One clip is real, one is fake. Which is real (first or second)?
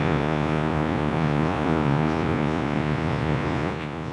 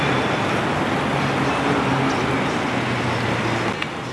second